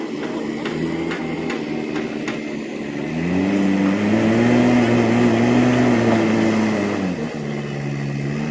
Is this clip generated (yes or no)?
no